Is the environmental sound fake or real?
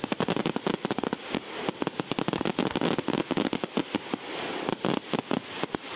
real